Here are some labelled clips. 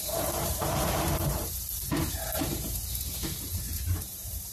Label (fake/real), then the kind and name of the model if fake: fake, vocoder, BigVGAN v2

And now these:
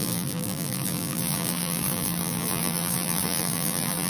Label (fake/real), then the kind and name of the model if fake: fake, vocoder, BigVGAN v2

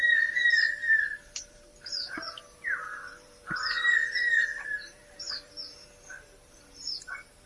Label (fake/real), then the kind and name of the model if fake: fake, vocoder, BigVGAN v2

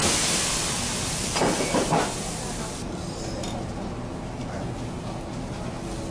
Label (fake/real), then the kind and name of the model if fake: real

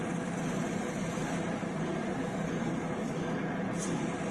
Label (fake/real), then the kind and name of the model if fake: fake, vocoder, BigVGAN v2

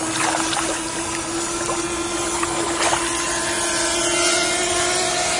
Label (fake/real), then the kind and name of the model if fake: real